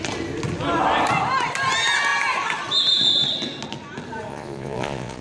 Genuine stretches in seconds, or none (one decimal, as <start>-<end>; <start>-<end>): 0.0-4.3